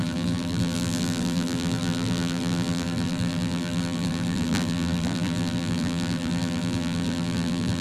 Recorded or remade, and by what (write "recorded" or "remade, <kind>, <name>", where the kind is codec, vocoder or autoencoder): remade, vocoder, BigVGAN v2